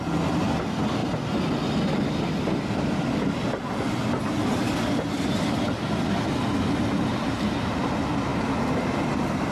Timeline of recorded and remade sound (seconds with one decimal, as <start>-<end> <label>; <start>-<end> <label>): 0.0-7.1 recorded; 7.1-7.8 remade; 7.8-9.5 recorded